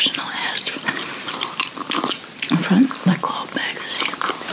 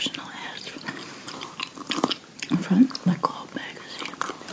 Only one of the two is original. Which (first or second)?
first